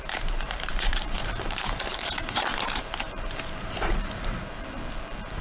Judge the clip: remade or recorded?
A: remade